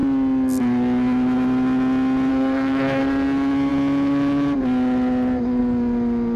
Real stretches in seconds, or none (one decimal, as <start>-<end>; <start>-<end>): 0.0-2.3; 3.0-6.4